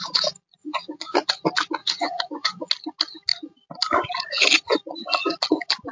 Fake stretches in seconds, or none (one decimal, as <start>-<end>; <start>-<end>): 0.6-1.3; 1.8-2.7